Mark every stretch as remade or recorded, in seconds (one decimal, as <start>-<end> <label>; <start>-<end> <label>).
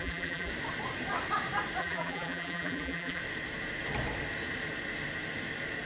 0.0-0.5 remade; 0.5-1.8 recorded; 1.8-3.2 remade; 3.2-5.9 recorded